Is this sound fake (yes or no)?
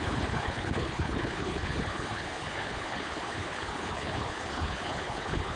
yes